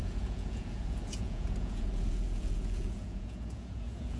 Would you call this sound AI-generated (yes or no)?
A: yes